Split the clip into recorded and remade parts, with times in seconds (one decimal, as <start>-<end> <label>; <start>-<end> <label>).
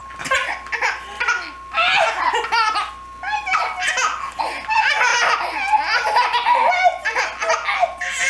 0.0-8.3 recorded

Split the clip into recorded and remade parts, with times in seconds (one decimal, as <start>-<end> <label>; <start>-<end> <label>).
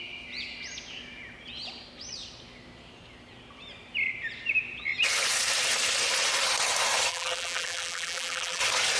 0.0-7.1 recorded; 7.1-8.6 remade; 8.6-9.0 recorded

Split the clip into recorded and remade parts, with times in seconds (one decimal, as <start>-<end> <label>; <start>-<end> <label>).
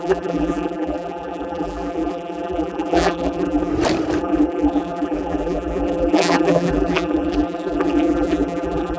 0.0-3.7 remade; 3.7-4.2 recorded; 4.2-9.0 remade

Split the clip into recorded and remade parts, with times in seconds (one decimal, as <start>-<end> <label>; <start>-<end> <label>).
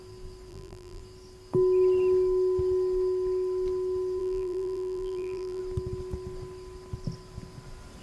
0.0-0.5 recorded; 0.5-1.0 remade; 1.0-4.2 recorded; 4.2-5.6 remade; 5.6-8.0 recorded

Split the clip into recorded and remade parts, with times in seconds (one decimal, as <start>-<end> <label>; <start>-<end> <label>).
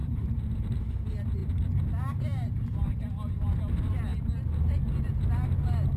0.0-0.8 remade; 0.8-6.0 recorded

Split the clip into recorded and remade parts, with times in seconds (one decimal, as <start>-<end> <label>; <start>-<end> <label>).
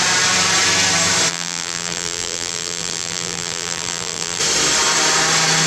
0.0-1.3 recorded; 1.3-4.4 remade; 4.4-5.7 recorded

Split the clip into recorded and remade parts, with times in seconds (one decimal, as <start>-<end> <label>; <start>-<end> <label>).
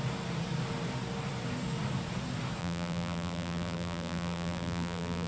0.0-2.6 recorded; 2.6-5.3 remade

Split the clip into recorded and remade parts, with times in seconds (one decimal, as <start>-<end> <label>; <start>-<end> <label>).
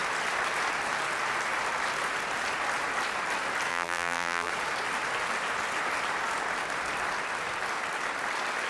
0.0-3.7 recorded; 3.7-4.5 remade; 4.5-8.7 recorded